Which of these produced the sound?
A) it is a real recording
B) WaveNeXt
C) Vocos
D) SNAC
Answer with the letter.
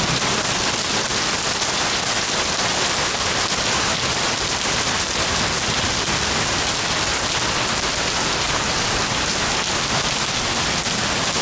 A